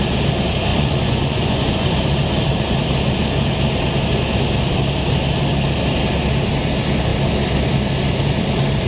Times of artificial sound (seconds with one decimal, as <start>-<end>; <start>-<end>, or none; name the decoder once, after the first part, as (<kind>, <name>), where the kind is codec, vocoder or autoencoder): 0.7-2.0 (vocoder, Vocos)